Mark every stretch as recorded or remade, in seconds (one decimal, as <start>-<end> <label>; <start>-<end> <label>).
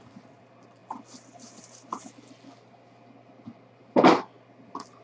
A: 0.0-5.0 recorded